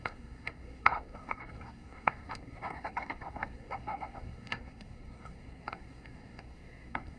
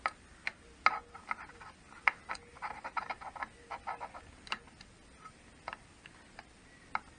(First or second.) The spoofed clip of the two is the first